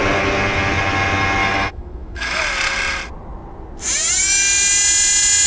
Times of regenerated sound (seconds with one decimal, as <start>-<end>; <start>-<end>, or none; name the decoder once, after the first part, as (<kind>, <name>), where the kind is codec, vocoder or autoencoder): 1.4-2.4 (autoencoder, DAC-VAE)